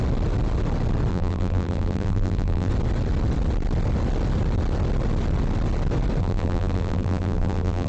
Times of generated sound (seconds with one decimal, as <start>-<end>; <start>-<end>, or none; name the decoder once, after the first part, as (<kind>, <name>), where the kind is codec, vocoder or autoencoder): 1.1-2.7 (vocoder, BigVGAN v2); 6.2-7.9